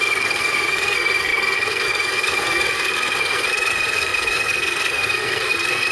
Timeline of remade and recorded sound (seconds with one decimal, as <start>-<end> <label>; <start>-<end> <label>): 0.0-5.9 remade